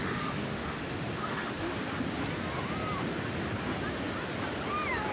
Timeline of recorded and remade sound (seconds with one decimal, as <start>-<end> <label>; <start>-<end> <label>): 0.0-1.7 remade; 1.7-5.1 recorded